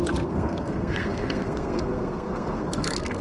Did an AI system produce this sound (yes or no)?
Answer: yes